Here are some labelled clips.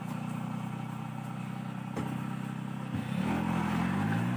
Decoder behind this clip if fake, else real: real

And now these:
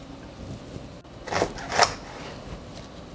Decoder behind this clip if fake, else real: real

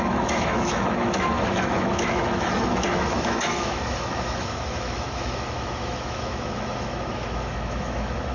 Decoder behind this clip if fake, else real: fake, autoencoder, DAC-VAE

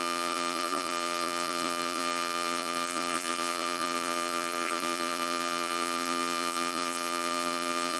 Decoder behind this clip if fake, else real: fake, vocoder, BigVGAN v2